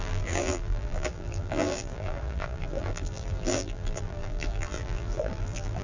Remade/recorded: remade